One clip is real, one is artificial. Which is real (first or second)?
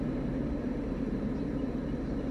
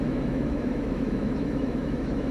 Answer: first